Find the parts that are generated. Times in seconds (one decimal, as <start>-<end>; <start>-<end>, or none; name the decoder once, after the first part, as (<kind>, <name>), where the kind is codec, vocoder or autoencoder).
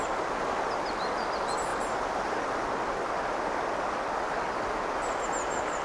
none